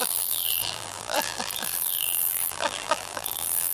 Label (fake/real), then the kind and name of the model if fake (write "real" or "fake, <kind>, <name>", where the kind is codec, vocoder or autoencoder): fake, vocoder, BigVGAN v2